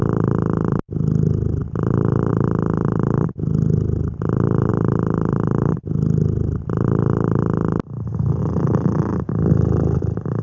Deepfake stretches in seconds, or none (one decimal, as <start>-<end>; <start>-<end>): none